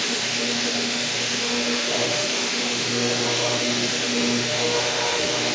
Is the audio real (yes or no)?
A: no